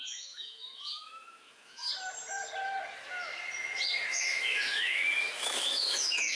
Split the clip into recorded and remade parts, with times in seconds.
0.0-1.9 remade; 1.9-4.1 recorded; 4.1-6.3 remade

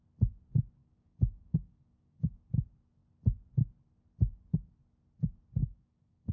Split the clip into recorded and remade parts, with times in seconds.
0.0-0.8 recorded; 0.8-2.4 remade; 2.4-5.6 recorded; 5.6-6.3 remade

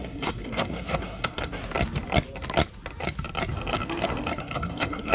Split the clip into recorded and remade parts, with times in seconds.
0.0-1.6 remade; 1.6-4.4 recorded; 4.4-5.1 remade

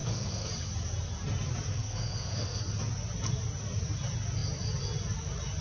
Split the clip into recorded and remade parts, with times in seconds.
0.0-0.5 remade; 0.5-1.7 recorded; 1.7-2.6 remade; 2.6-5.6 recorded

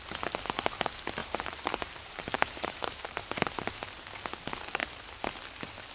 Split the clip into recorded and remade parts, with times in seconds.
0.0-1.2 recorded; 1.2-3.4 remade; 3.4-5.9 recorded